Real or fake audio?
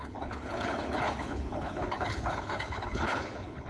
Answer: fake